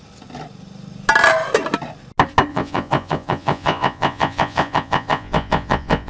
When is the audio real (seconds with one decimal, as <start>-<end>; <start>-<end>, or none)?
0.0-2.5